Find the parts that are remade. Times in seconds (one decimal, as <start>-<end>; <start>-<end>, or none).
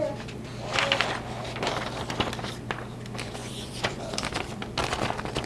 3.4-4.0